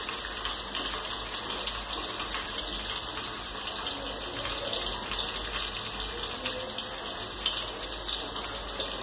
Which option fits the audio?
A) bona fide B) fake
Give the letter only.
A